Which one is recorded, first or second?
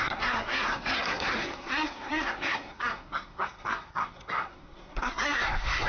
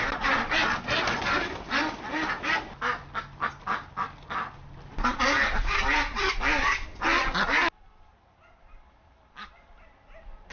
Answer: second